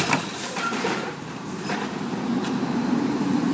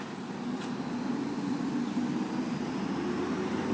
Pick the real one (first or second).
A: second